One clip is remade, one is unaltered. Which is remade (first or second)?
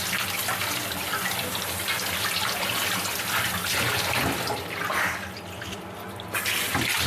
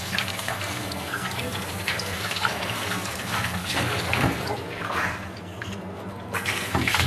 second